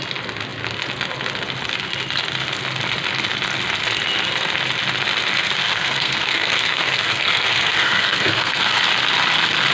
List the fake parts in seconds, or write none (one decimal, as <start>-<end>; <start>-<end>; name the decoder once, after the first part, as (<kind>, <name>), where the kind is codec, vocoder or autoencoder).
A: 5.6-8.8 (codec, SNAC)